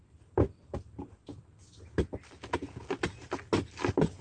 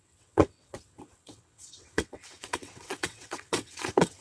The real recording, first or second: first